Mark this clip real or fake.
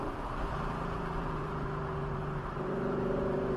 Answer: fake